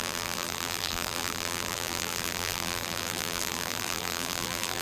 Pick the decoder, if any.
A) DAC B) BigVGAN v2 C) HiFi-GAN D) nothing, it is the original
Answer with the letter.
B